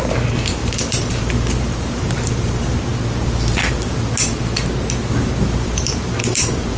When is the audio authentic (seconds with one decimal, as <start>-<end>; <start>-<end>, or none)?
2.9-5.4